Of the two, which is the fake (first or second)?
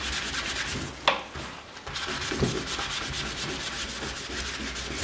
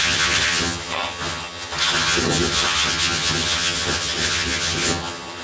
second